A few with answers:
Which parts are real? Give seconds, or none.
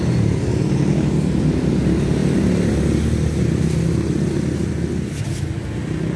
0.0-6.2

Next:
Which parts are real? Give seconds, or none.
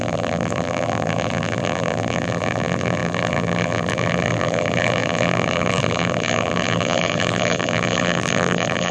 none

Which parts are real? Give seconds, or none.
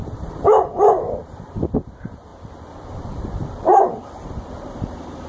2.3-3.4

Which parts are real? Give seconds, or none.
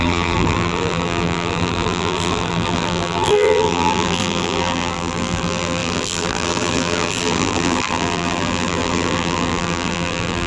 none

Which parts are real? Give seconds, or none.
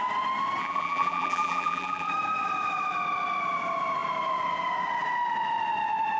0.0-0.6; 2.1-6.2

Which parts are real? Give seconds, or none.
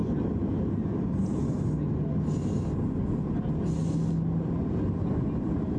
0.0-5.8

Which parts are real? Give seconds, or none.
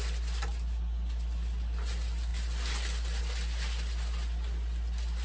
0.0-5.2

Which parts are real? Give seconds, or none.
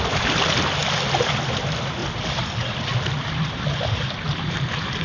0.0-2.0